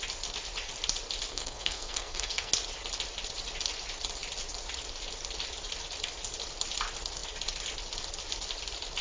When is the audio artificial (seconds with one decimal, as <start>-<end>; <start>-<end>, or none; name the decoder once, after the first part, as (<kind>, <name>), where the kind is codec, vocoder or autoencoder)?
1.3-2.5 (codec, SNAC)